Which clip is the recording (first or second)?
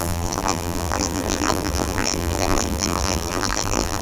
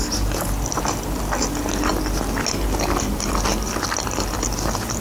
second